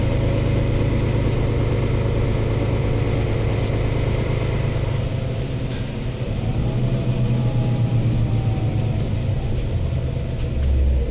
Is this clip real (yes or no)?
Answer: yes